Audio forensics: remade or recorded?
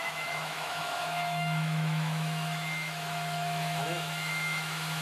remade